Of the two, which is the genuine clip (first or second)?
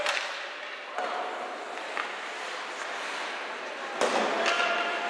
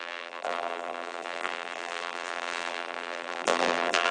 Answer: first